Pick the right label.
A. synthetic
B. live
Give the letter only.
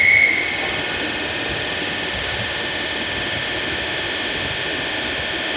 A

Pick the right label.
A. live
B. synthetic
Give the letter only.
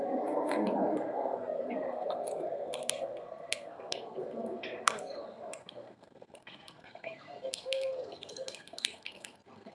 B